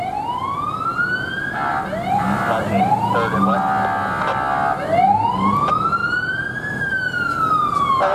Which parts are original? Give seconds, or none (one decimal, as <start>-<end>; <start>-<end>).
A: 0.0-8.1